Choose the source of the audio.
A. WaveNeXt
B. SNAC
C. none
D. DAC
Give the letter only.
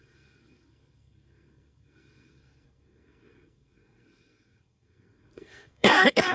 B